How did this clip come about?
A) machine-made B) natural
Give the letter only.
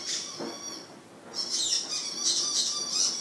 B